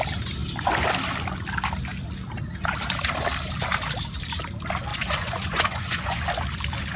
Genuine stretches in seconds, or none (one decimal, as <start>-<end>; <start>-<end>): 0.0-4.9; 6.2-7.0